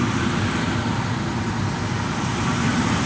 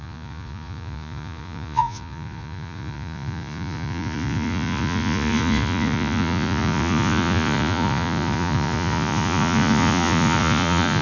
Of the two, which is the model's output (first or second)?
second